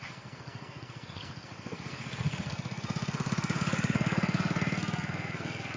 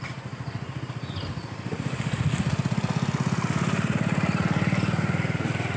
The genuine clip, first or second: second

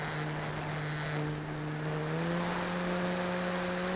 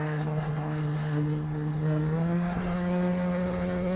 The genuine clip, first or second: first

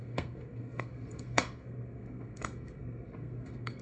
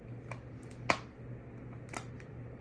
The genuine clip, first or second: second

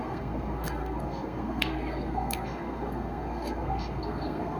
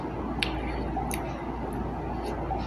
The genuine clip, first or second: second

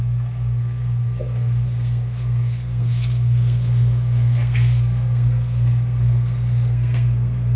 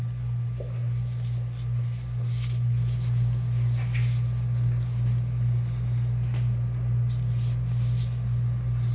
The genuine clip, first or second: second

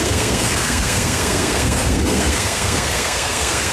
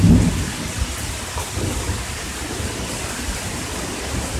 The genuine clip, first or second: second